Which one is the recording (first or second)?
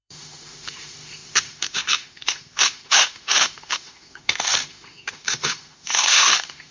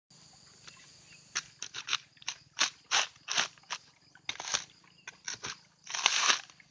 second